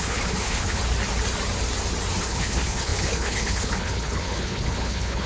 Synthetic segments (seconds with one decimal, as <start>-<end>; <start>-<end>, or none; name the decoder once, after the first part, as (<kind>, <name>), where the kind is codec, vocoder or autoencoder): 0.0-0.8 (codec, HILCodec); 2.2-5.3